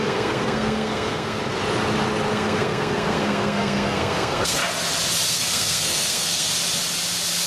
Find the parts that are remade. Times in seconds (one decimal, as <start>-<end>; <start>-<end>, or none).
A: 0.0-1.4; 2.3-4.6; 5.3-6.5